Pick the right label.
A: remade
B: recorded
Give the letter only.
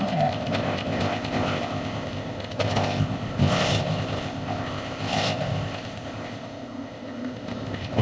A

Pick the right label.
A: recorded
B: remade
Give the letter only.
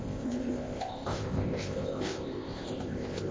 B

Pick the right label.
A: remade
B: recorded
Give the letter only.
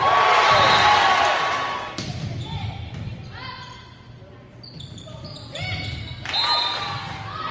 B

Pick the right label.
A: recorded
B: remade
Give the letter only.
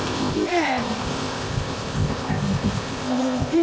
B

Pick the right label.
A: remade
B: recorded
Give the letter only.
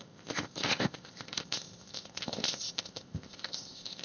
A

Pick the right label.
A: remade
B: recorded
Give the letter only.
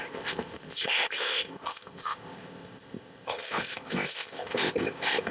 A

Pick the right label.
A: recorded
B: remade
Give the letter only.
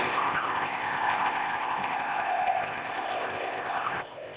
B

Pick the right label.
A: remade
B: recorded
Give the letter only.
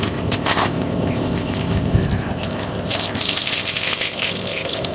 A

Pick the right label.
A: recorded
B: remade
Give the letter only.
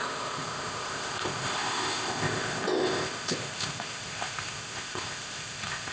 B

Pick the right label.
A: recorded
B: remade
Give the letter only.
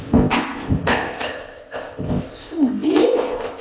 B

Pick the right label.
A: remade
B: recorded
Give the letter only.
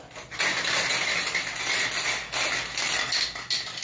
B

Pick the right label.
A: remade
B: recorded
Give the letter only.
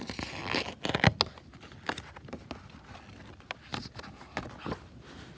B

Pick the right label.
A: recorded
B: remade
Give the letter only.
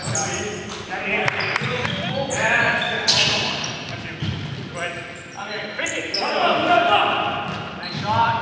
A